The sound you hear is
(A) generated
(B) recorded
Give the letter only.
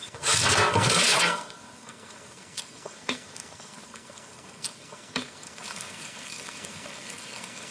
A